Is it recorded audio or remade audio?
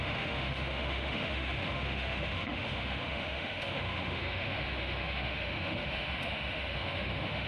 remade